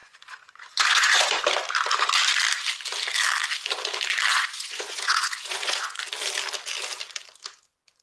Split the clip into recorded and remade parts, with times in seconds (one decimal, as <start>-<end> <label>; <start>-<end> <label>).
0.0-1.4 remade; 1.4-4.3 recorded; 4.3-6.0 remade; 6.0-8.0 recorded